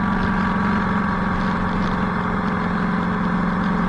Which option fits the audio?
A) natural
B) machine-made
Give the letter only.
A